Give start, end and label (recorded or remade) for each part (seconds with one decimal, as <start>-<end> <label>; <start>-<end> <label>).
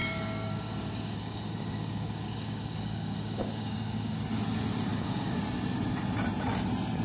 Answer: 0.0-4.2 remade; 4.2-4.9 recorded; 4.9-5.4 remade; 5.4-7.0 recorded